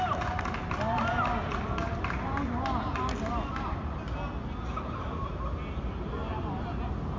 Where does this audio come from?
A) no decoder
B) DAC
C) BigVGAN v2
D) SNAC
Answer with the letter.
A